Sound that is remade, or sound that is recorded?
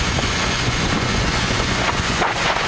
remade